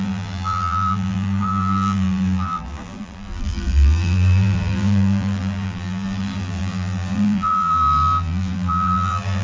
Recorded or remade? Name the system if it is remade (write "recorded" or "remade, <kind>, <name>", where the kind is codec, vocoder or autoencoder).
remade, vocoder, BigVGAN v2